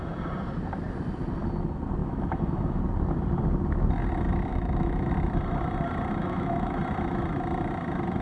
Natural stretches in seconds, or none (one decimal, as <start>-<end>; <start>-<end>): 0.0-2.0; 2.8-4.5; 5.1-6.2; 6.8-8.2